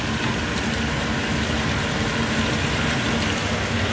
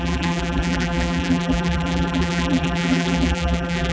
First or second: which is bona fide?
first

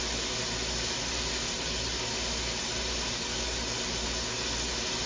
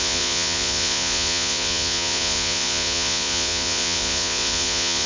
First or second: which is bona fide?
first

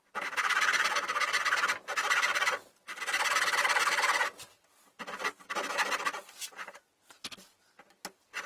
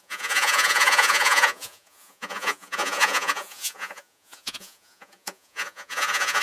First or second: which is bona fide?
first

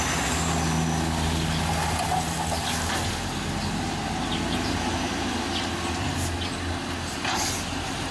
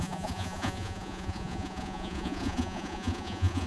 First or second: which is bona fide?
first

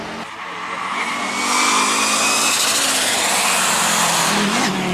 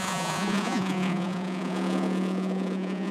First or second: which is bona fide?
first